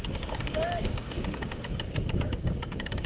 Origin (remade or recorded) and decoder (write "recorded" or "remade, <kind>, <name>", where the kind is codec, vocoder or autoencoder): remade, codec, DAC